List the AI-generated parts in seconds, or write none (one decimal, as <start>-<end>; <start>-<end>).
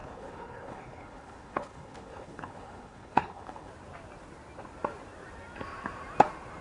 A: 0.0-3.7